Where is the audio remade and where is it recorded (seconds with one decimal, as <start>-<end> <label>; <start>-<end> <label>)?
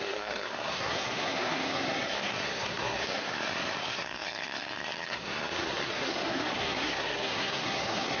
0.0-8.2 remade